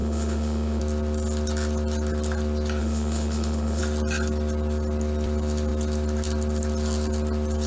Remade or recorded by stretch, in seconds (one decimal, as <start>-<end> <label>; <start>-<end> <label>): 0.0-0.8 remade; 0.8-2.8 recorded; 2.8-3.8 remade; 3.8-7.7 recorded